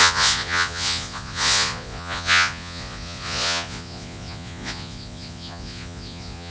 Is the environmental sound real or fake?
fake